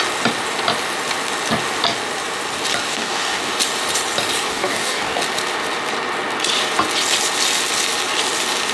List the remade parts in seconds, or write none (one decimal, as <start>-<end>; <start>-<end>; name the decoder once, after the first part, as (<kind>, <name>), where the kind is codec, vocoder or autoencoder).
2.9-3.5 (codec, DAC); 4.5-5.2